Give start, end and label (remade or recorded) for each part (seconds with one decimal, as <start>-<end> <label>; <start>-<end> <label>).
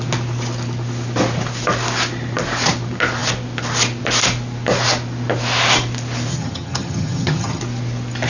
0.0-6.3 recorded; 6.3-7.6 remade; 7.6-8.3 recorded